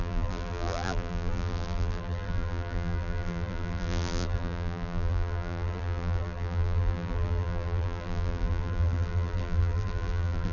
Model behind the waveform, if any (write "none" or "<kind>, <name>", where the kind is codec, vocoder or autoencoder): vocoder, BigVGAN v2